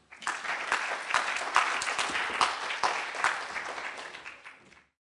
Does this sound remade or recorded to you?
recorded